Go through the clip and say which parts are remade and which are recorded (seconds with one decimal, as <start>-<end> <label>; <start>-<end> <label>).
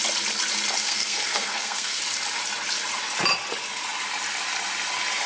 0.0-0.8 recorded; 0.8-2.0 remade; 2.0-5.3 recorded